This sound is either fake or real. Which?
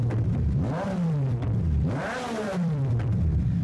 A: fake